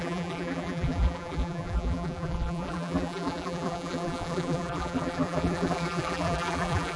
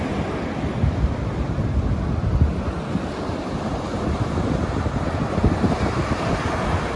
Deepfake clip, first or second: first